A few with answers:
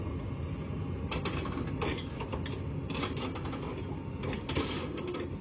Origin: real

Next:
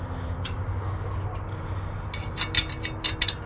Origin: real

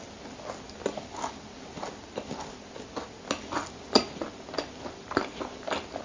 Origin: real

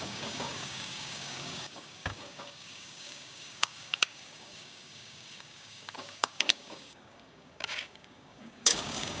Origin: fake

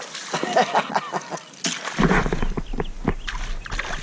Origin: real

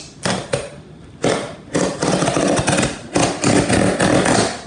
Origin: real